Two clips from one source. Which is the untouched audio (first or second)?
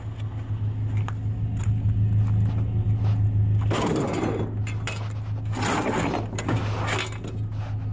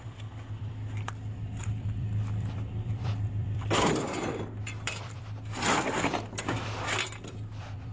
first